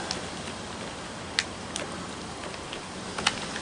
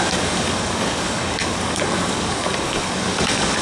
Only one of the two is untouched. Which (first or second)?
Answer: first